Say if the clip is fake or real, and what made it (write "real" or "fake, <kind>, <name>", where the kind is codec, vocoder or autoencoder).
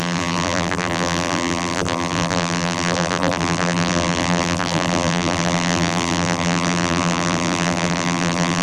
fake, vocoder, BigVGAN v2